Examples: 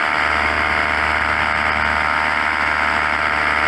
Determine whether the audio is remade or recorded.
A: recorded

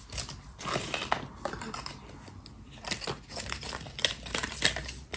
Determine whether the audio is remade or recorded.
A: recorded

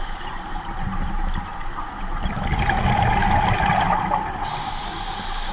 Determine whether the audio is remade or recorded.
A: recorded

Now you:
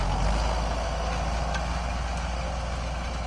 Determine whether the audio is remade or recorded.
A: recorded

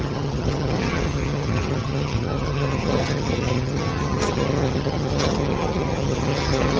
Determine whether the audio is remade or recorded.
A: remade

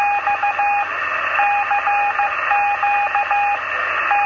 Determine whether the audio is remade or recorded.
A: recorded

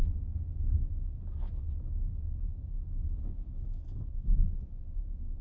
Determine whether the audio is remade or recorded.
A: remade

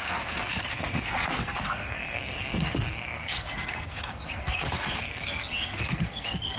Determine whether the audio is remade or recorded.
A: remade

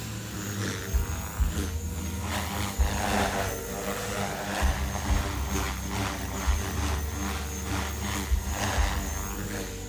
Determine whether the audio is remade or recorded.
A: recorded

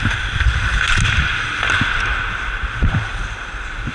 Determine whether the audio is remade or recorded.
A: recorded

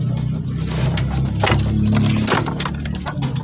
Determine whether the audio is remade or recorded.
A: recorded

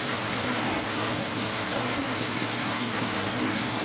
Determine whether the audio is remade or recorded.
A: remade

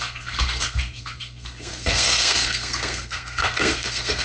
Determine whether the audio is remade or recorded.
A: remade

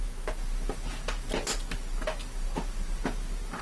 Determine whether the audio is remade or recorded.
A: recorded